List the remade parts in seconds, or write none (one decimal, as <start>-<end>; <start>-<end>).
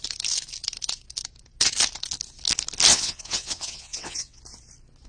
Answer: 2.9-4.4